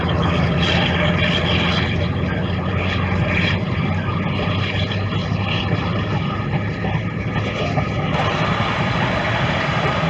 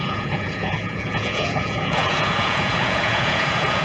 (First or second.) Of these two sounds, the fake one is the second